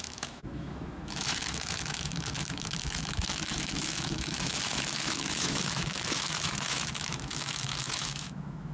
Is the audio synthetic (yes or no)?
yes